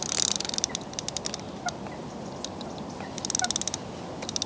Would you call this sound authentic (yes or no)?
yes